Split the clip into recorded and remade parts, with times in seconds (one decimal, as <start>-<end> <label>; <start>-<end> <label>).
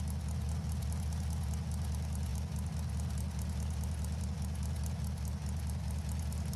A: 0.0-6.6 recorded